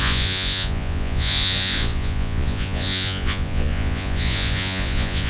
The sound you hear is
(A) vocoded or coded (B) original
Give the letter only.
A